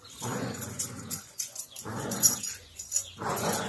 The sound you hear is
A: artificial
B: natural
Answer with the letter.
A